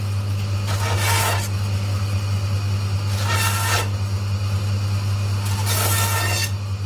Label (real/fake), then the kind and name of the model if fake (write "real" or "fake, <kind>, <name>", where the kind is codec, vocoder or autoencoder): real